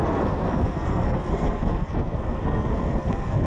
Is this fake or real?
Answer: fake